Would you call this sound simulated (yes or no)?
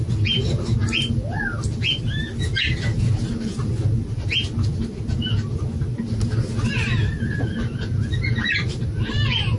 no